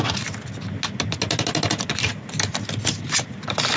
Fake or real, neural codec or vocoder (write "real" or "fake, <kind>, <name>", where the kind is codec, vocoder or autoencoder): real